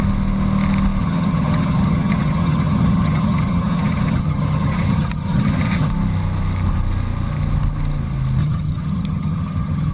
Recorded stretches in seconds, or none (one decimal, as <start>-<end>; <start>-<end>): 0.0-1.0; 5.9-8.4